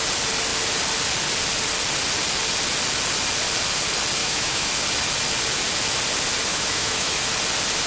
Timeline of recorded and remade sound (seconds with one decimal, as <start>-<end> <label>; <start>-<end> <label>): 0.0-4.2 recorded; 4.2-4.7 remade; 4.7-6.5 recorded; 6.5-7.2 remade; 7.2-7.9 recorded